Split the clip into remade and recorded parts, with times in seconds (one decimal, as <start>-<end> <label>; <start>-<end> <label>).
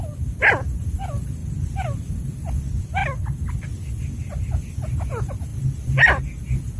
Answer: 0.0-6.8 recorded